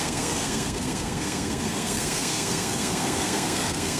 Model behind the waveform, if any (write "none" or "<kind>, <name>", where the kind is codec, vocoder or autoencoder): codec, SNAC